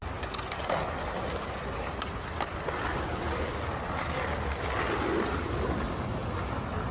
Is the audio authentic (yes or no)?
yes